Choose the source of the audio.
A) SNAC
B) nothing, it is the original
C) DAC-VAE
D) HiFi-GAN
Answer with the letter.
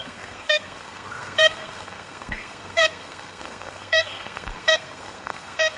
A